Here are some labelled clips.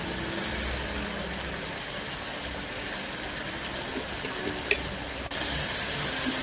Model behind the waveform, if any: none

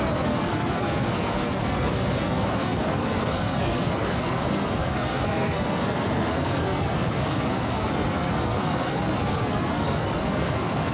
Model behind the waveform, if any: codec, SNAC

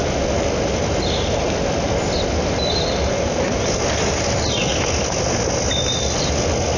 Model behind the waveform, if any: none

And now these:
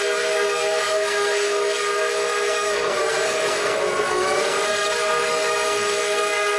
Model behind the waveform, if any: codec, SNAC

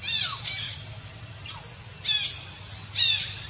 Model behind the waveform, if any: none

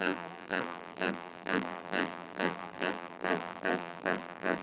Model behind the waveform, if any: vocoder, BigVGAN v2